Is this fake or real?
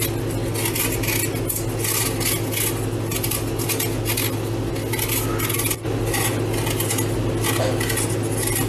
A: real